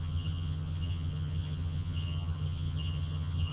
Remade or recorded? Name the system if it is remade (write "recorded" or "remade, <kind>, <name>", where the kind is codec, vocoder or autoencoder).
remade, vocoder, HiFi-GAN